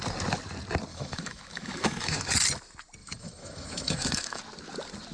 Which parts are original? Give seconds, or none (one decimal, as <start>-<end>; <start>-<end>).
0.0-0.9; 2.3-3.0; 4.4-5.1